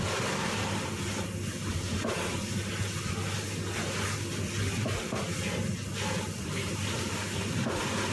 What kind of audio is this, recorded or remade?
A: recorded